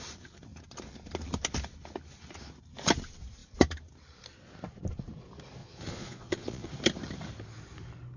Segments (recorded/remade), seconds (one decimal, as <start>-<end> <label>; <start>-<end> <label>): 0.0-5.6 recorded; 5.6-6.7 remade; 6.7-8.2 recorded